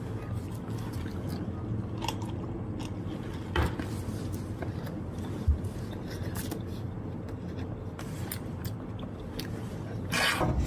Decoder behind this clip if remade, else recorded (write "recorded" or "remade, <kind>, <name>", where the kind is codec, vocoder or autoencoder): recorded